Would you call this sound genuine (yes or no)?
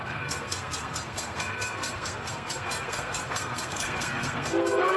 no